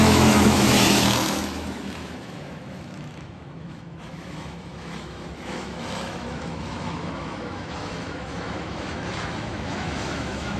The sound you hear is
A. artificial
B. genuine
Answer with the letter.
A